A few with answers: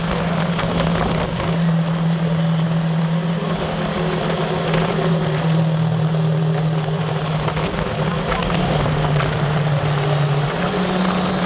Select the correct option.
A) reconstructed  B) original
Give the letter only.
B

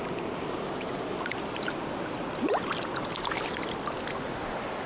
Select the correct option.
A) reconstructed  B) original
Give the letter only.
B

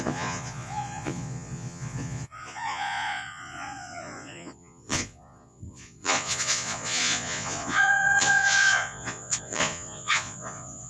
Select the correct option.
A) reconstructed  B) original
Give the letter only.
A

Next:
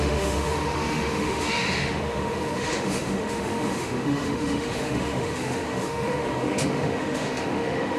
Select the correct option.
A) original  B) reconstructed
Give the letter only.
B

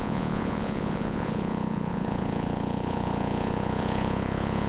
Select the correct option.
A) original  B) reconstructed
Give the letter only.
B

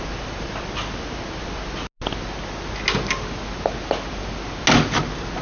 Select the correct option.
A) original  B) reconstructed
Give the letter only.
A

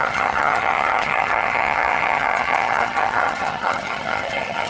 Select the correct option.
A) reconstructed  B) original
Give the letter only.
A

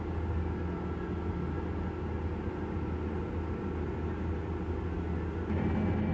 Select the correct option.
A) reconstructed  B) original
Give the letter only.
B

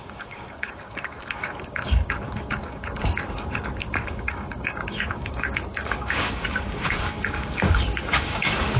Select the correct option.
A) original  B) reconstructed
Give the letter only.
B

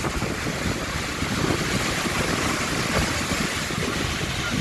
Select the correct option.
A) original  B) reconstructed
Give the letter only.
A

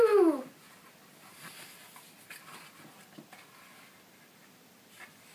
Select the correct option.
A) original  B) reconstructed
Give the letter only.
A